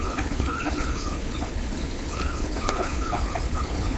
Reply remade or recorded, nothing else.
remade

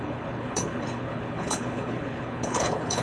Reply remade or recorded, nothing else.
remade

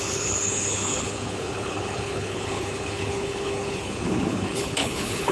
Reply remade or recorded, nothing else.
remade